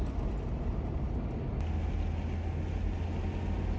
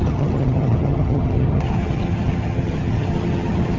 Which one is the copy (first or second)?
second